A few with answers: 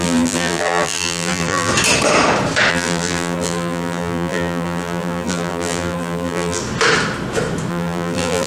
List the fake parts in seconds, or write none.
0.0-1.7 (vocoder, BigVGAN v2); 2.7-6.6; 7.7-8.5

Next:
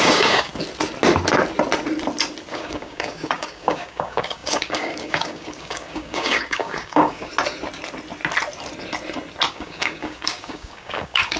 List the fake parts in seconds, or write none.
0.0-0.5 (codec, DAC); 2.5-7.3; 9.5-11.4